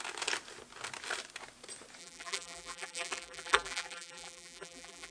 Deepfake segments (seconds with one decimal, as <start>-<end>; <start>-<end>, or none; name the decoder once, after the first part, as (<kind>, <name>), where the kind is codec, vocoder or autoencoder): 2.0-5.1 (vocoder, BigVGAN v2)